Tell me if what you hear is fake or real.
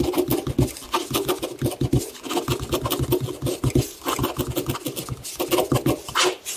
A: real